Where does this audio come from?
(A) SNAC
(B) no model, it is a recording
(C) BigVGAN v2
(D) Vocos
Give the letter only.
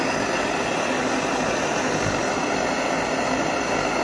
B